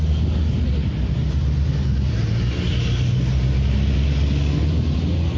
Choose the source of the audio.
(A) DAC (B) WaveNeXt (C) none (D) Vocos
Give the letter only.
C